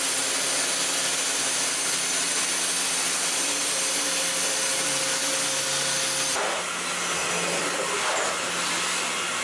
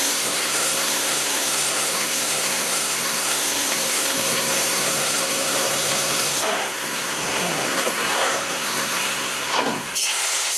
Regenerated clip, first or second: second